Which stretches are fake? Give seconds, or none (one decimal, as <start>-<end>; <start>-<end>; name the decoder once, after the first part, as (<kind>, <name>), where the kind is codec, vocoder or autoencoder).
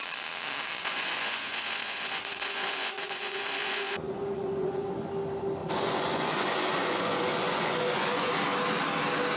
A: 0.8-4.9 (vocoder, Vocos); 5.6-8.3